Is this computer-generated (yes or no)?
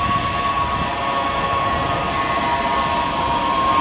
no